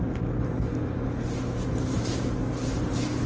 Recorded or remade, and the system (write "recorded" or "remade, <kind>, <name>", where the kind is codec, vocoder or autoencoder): recorded